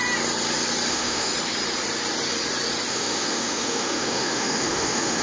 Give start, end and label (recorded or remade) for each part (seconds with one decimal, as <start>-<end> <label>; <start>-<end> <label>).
0.0-0.9 recorded; 0.9-1.3 remade; 1.3-2.9 recorded; 2.9-5.2 remade

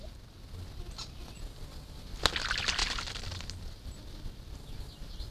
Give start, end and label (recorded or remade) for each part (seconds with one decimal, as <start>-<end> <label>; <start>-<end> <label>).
0.0-5.3 recorded